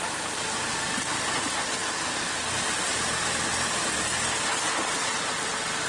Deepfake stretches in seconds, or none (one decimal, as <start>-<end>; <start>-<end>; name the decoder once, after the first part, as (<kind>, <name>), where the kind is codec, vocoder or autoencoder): none